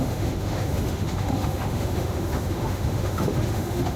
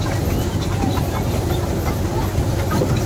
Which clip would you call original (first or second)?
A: second